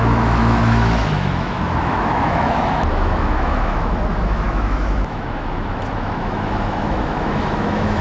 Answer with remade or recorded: remade